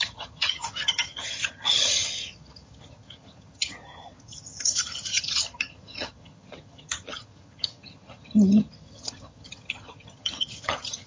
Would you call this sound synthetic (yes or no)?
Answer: yes